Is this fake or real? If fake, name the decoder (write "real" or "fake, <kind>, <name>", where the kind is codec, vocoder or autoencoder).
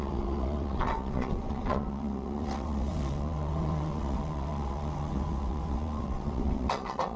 fake, vocoder, WaveNeXt